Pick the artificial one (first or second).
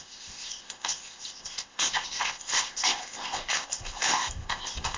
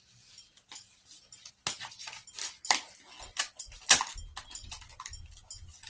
first